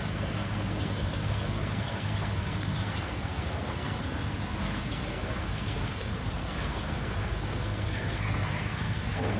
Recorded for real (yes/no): no